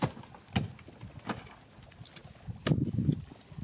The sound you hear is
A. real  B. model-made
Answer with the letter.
A